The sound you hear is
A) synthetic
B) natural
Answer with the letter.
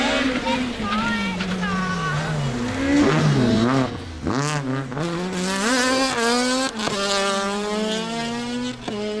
B